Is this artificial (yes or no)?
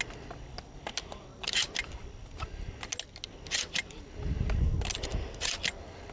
no